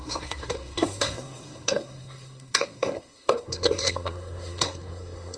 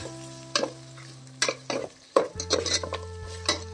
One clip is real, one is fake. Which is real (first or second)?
second